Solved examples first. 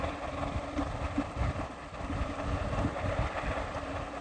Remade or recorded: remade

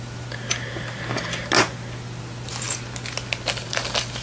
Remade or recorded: recorded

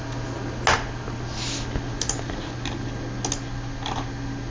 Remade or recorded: recorded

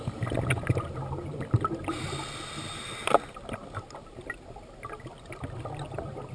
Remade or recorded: recorded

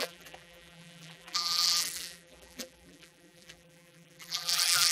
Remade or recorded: remade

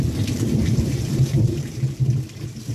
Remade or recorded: remade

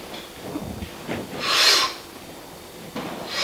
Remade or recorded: remade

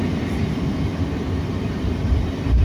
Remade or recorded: remade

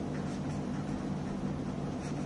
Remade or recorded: recorded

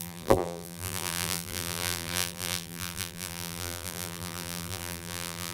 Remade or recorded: remade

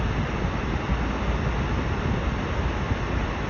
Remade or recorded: recorded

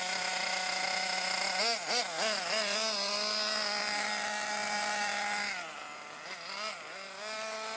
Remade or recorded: recorded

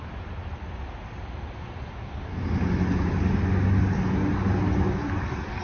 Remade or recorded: recorded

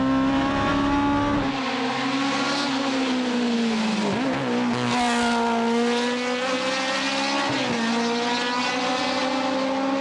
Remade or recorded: recorded